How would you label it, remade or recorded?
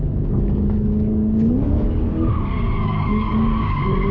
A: remade